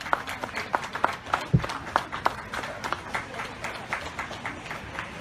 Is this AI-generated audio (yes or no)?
no